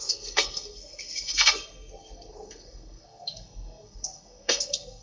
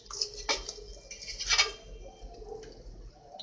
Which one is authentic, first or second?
second